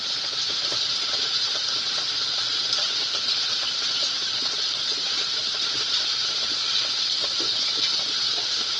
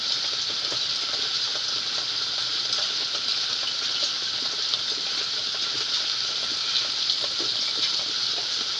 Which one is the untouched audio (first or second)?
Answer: second